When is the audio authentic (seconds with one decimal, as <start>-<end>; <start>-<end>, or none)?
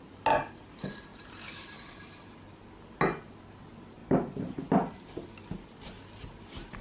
0.0-1.1; 1.9-4.0; 4.5-6.8